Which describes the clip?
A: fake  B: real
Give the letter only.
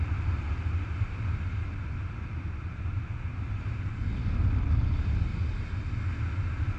B